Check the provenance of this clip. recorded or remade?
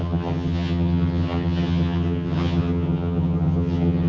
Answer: remade